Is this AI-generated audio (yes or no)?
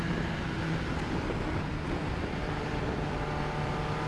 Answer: no